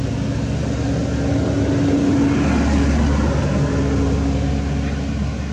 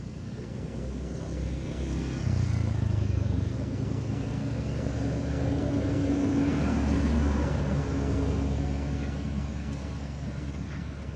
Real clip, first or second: first